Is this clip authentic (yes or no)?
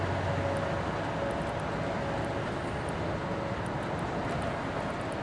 yes